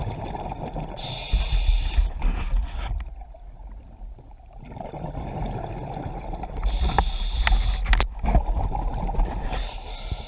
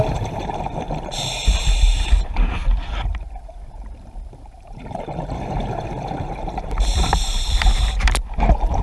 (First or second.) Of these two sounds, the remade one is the second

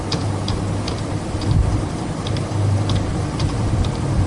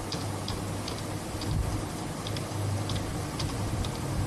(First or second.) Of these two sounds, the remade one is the first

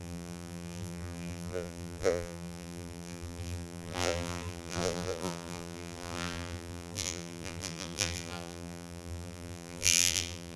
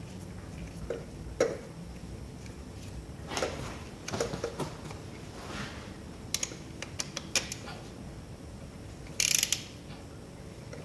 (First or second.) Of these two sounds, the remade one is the first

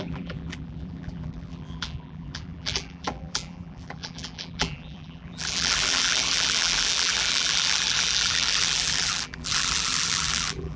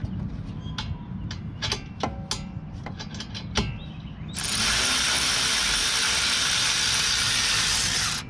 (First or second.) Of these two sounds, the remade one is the first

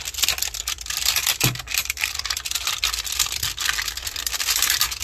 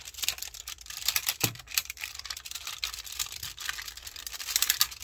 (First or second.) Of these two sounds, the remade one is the second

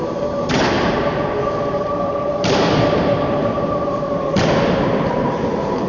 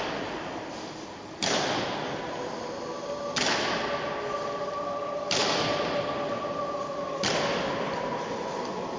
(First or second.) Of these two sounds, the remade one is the first